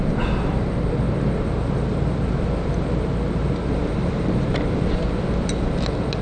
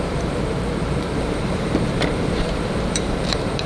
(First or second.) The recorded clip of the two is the first